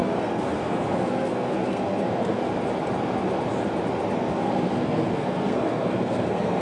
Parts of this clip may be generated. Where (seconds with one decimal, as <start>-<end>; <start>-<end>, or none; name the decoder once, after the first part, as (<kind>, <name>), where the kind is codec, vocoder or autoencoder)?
0.0-2.5 (codec, SNAC); 4.2-6.6